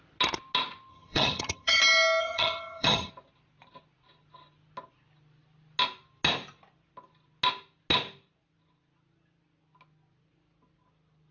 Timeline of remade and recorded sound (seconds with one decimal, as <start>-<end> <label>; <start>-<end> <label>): 0.0-0.9 recorded; 0.9-1.8 remade; 1.8-2.2 recorded; 2.2-3.1 remade; 3.1-11.3 recorded